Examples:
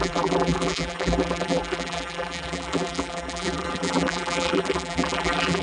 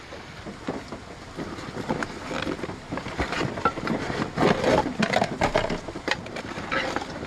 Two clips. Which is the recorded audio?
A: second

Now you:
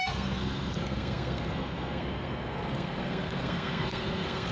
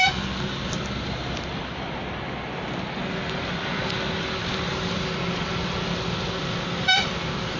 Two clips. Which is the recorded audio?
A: second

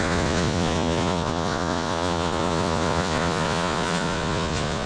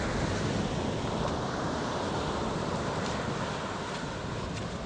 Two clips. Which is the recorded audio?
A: second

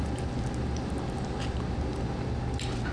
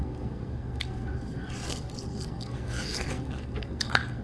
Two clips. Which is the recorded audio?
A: first